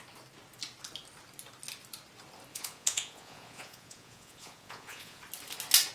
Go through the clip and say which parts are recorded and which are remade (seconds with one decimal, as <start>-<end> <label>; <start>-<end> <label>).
0.0-2.5 recorded; 2.5-5.2 remade; 5.2-5.9 recorded